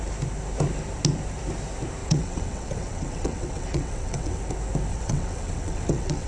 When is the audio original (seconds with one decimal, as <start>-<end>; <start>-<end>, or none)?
0.0-2.0; 4.4-4.9